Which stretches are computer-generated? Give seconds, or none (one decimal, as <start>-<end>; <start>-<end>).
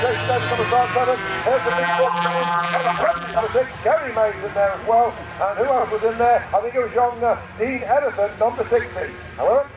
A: 1.7-3.4